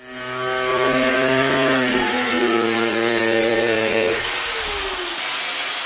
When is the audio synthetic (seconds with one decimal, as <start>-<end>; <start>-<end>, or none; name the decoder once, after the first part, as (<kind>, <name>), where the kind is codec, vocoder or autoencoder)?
0.7-4.2 (vocoder, Vocos)